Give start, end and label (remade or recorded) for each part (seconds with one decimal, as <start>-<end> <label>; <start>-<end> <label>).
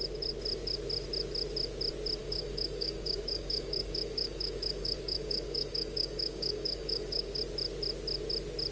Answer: 0.0-2.2 recorded; 2.2-7.4 remade; 7.4-8.7 recorded